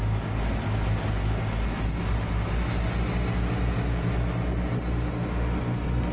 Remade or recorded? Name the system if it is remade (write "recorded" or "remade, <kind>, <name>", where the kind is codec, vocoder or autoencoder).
recorded